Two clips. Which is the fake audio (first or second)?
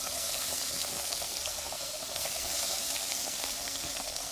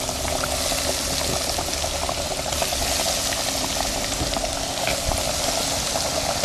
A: first